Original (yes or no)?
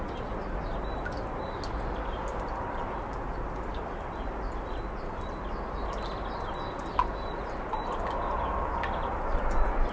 yes